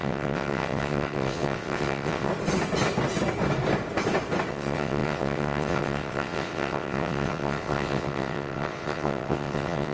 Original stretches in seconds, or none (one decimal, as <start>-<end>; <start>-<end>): 2.3-4.5